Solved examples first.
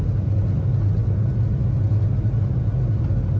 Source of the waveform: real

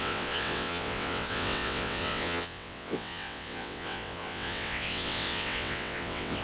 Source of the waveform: fake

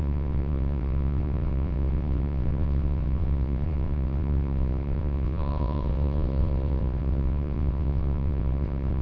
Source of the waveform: fake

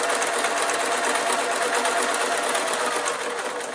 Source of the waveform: real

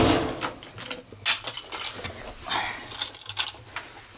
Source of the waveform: real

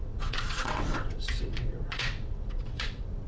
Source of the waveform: fake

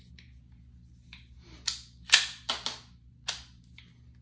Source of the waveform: real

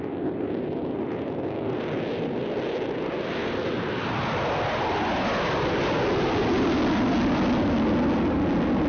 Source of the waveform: real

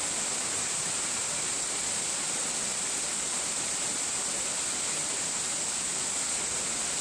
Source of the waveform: real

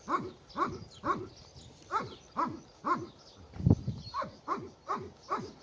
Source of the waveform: real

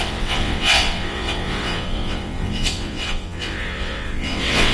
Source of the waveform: fake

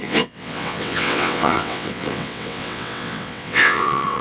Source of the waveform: fake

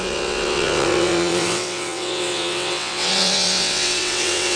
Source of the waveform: fake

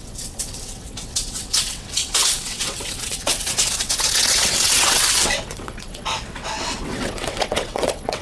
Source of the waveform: fake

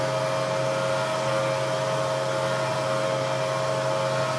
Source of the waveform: real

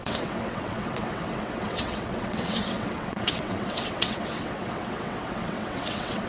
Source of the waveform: fake